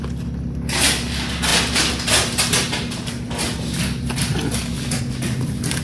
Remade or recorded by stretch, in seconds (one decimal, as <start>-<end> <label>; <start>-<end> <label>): 0.0-5.8 recorded